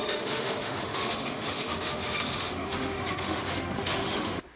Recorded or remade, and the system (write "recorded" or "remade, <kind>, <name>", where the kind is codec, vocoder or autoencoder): remade, autoencoder, DAC-VAE